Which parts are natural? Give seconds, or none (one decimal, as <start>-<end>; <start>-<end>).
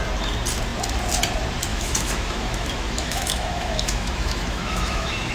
0.0-1.7